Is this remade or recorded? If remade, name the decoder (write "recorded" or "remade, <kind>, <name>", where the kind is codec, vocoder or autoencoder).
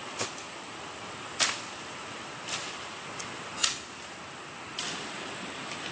recorded